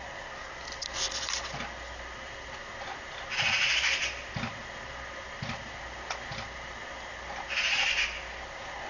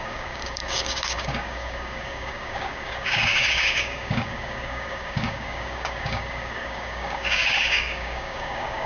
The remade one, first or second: second